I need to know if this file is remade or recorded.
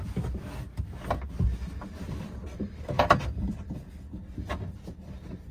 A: recorded